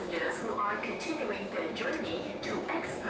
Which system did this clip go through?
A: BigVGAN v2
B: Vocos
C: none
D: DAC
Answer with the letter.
D